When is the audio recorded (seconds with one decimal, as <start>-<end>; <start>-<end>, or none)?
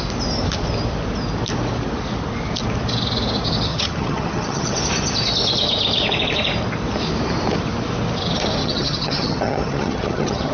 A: 0.0-3.7; 4.8-8.6